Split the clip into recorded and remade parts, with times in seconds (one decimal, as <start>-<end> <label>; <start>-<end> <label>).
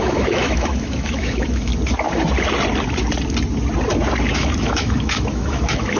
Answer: 0.0-1.7 remade; 1.7-4.3 recorded; 4.3-6.0 remade